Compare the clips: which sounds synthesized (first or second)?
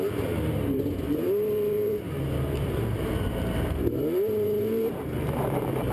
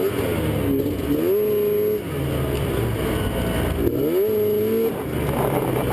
first